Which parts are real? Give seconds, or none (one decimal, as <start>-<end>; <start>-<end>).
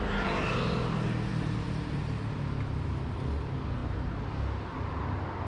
0.0-1.3; 2.0-3.8; 4.4-5.5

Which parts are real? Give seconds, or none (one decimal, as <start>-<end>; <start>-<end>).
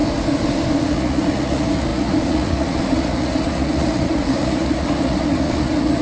0.0-0.8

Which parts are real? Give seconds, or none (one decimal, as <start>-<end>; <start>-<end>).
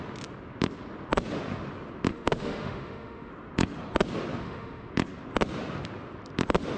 0.0-2.1; 3.3-4.4; 4.9-6.8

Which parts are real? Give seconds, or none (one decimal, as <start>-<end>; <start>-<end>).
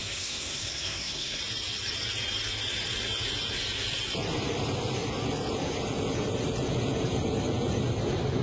1.4-8.4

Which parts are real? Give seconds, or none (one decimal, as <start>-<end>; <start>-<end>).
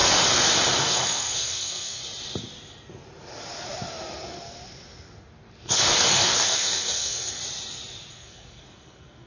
0.0-0.8; 2.0-6.0; 7.4-8.1